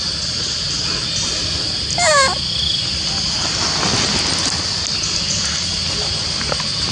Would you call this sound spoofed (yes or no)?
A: no